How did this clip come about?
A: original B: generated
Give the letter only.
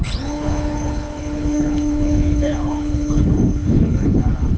B